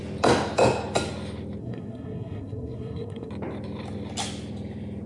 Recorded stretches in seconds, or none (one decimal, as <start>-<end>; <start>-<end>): 0.0-1.6; 3.3-5.1

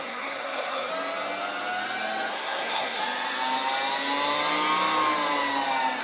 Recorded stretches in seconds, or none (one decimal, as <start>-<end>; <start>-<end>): 0.9-2.3; 3.0-6.0

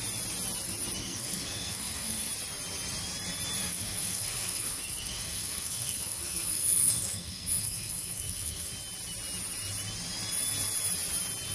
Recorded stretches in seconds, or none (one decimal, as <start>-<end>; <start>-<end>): 0.0-1.0; 2.3-3.6; 8.7-11.5

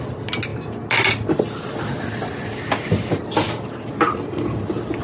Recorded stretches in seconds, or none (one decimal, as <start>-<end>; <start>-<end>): 0.0-5.0

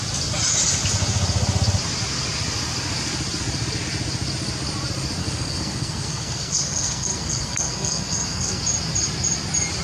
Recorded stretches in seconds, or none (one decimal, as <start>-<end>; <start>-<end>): 0.0-5.2; 8.6-9.8